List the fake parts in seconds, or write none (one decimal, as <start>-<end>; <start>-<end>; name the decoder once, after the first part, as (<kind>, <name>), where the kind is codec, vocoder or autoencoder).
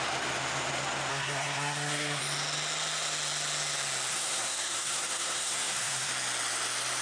1.1-2.2 (codec, SNAC); 4.1-6.1